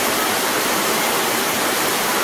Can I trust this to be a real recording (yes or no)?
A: no